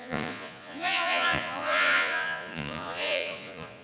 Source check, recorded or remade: remade